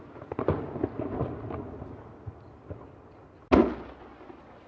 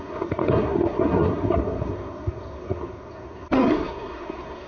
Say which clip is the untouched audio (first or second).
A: first